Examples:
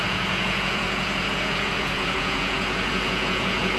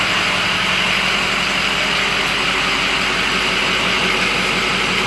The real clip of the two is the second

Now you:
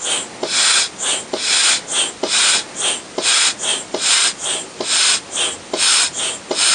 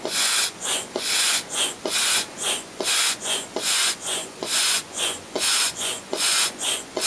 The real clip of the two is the first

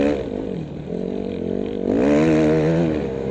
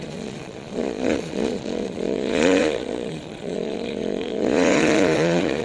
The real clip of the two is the first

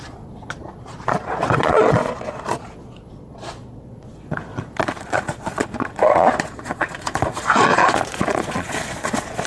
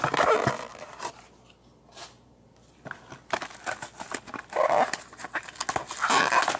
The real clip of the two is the second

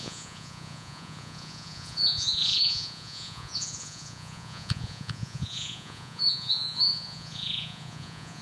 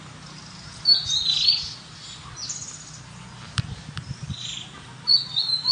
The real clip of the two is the second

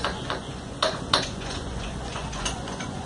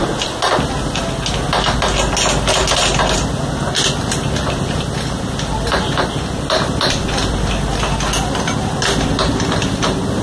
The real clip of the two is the second